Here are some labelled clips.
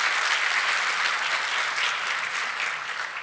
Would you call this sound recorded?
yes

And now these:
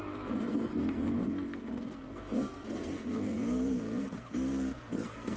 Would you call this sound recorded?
no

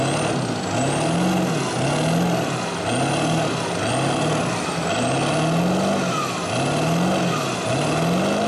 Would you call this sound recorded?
yes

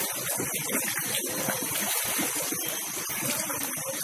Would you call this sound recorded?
yes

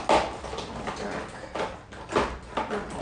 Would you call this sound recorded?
yes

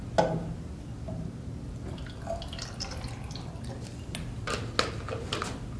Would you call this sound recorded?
yes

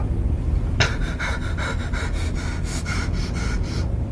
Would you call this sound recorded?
yes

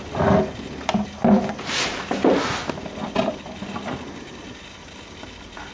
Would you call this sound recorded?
yes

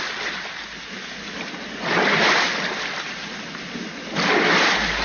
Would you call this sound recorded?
yes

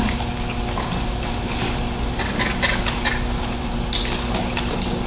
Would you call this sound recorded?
yes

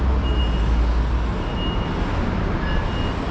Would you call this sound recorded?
yes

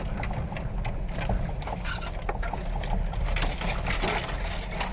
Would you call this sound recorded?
yes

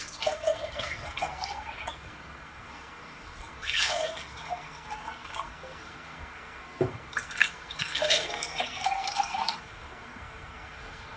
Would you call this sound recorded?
no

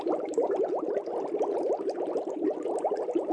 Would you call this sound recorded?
yes